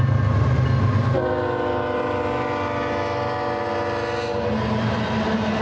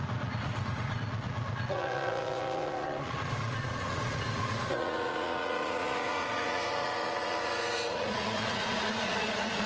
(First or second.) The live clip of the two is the first